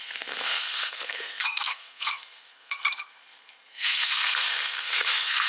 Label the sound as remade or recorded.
remade